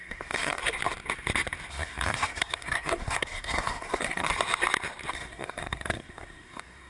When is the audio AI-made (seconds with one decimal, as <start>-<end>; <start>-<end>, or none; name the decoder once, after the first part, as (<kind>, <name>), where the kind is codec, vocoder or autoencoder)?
0.0-0.6 (codec, SNAC); 1.7-4.3; 5.1-6.9